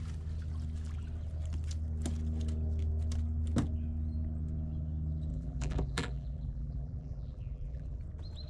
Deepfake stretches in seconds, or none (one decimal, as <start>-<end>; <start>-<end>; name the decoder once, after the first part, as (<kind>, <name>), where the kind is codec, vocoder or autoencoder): 5.3-8.0 (vocoder, BigVGAN v2)